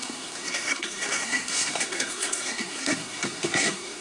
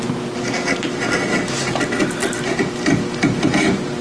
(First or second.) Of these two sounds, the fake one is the first